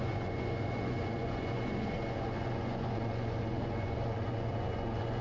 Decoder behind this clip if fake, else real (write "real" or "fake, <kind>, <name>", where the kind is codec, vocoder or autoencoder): fake, vocoder, Vocos